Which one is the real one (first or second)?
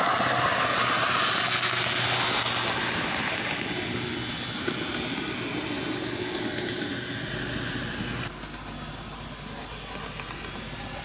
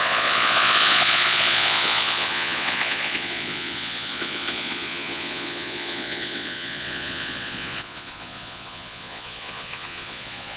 first